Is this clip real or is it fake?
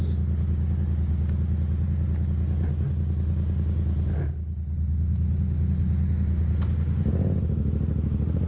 real